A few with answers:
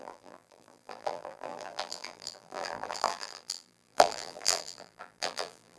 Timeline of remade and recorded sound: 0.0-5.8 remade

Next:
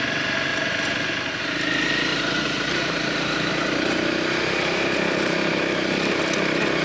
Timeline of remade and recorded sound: 0.0-0.5 recorded; 0.5-1.4 remade; 1.4-2.1 recorded; 2.1-6.2 remade; 6.2-6.8 recorded

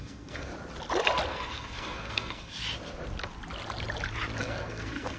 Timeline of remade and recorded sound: 0.0-0.5 remade; 0.5-1.3 recorded; 1.3-2.6 remade; 2.6-4.4 recorded; 4.4-5.2 remade

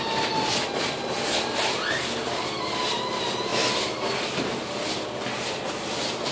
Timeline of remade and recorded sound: 0.0-6.3 recorded

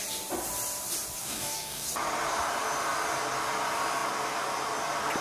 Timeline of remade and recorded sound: 0.0-1.2 recorded; 1.2-1.9 remade; 1.9-5.2 recorded

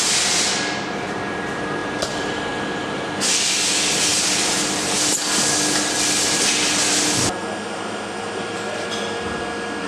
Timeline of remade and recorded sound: 0.0-1.8 recorded; 1.8-2.4 remade; 2.4-9.9 recorded